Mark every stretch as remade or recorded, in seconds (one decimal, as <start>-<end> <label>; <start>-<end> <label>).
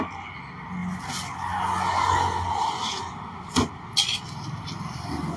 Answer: 0.0-5.4 recorded